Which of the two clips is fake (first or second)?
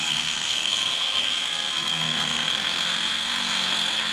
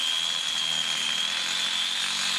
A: first